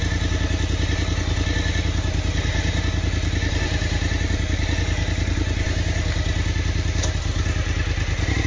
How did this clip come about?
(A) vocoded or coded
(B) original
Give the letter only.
B